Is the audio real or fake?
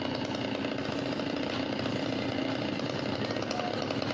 real